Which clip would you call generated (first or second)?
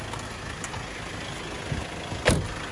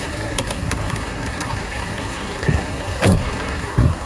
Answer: second